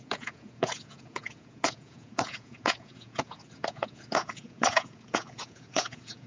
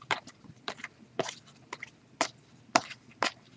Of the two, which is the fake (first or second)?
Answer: first